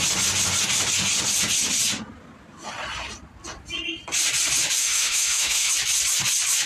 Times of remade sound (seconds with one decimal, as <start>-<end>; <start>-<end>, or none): 4.8-5.7